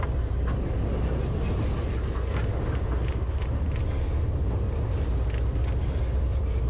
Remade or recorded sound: recorded